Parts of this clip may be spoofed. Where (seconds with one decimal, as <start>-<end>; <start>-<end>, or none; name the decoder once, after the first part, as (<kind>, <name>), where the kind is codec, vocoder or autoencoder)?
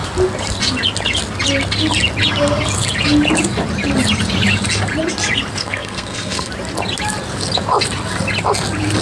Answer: 5.6-6.5 (codec, SNAC)